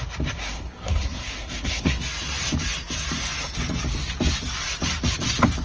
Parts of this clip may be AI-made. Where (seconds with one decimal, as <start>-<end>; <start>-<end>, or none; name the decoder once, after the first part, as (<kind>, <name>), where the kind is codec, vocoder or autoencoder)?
0.4-2.0 (codec, SNAC)